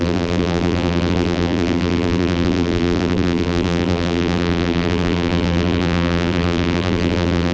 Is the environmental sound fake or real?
fake